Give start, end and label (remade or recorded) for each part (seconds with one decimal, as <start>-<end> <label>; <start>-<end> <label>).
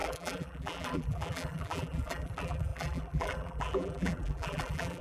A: 0.0-5.0 remade